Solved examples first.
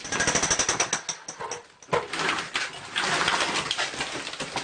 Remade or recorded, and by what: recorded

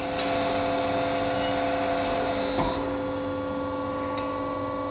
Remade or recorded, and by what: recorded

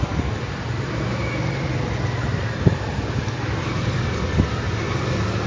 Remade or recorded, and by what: recorded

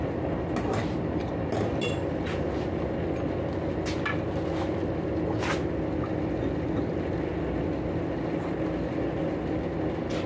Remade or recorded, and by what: recorded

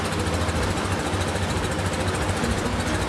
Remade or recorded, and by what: recorded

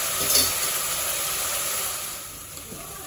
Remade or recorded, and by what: remade, vocoder, BigVGAN v2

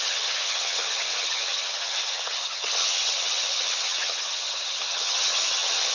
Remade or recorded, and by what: remade, vocoder, HiFi-GAN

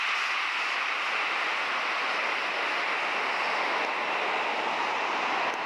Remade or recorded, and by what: recorded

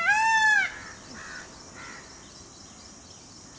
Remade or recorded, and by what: recorded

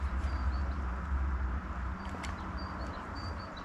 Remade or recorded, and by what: remade, vocoder, BigVGAN v2